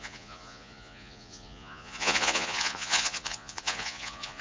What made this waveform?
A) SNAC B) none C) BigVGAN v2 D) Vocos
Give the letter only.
D